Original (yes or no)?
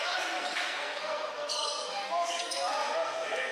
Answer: no